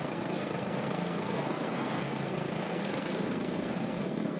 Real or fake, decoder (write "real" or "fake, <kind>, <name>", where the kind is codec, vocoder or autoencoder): fake, codec, SNAC